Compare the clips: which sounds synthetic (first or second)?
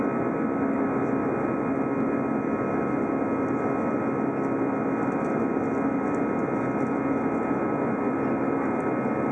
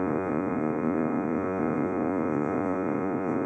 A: second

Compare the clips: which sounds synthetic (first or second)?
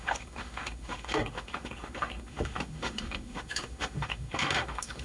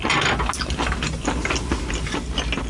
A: first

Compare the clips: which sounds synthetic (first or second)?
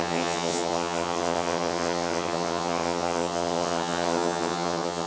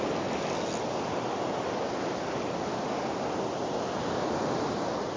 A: first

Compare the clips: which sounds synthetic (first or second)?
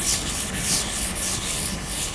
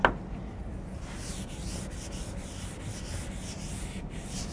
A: first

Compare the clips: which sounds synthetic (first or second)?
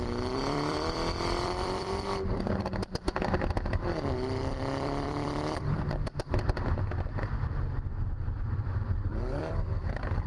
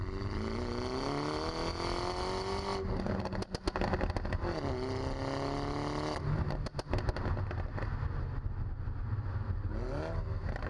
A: first